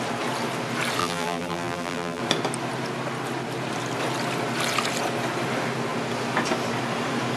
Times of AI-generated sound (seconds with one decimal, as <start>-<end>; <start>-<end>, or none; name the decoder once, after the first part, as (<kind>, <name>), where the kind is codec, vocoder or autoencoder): 1.0-2.2 (vocoder, BigVGAN v2)